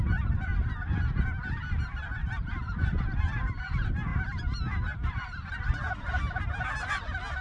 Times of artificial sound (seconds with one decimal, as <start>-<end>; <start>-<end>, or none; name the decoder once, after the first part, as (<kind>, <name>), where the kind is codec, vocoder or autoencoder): 2.2-3.0 (vocoder, BigVGAN v2)